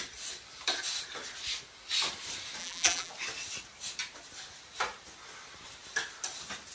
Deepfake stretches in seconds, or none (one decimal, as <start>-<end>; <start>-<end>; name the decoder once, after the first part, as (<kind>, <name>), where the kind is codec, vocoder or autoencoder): 2.6-3.1 (vocoder, BigVGAN v2)